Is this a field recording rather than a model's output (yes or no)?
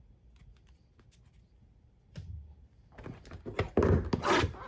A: yes